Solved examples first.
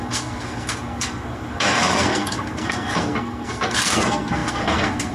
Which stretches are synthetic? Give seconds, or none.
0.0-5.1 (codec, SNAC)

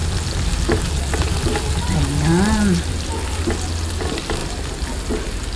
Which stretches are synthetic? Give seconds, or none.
none

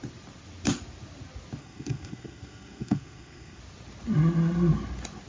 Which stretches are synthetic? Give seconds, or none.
1.6-3.6 (codec, SNAC)

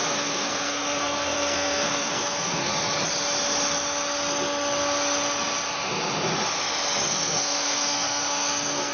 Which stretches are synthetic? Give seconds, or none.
0.0-2.7 (codec, SNAC); 7.1-8.9

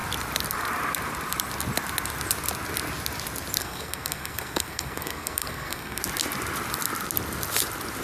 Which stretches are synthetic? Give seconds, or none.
3.6-6.0 (codec, SNAC)

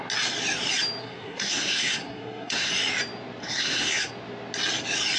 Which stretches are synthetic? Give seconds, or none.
1.0-2.7 (codec, SNAC); 3.4-4.1